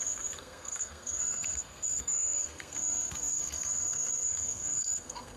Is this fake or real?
fake